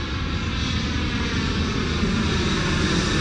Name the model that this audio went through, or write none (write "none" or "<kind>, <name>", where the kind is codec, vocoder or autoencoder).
none